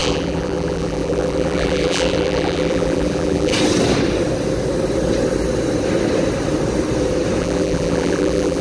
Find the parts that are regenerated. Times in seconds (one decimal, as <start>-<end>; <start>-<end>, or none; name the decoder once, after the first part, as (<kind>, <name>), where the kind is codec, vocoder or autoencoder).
0.0-3.5 (vocoder, BigVGAN v2); 7.4-8.6

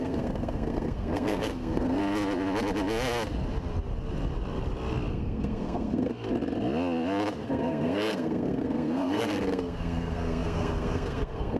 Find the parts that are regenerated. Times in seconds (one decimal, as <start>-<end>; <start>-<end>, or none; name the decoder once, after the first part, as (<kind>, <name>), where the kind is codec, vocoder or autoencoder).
0.0-2.0 (codec, SNAC); 5.1-6.1; 7.4-11.6